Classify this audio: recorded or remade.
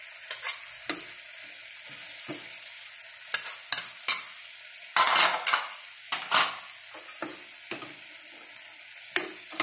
recorded